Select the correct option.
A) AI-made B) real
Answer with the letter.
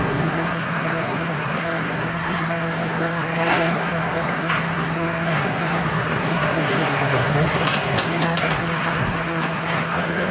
A